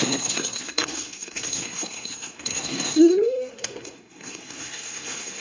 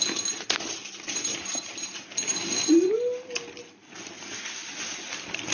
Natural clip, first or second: second